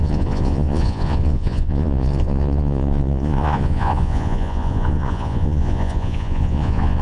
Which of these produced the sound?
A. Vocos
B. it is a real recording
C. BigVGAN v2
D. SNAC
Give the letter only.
A